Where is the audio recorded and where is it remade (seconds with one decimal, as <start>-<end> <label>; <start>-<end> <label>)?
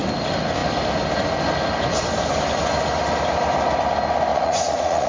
0.0-4.3 recorded; 4.3-5.1 remade